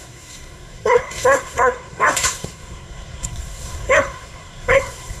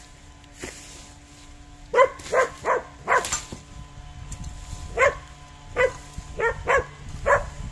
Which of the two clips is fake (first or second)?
first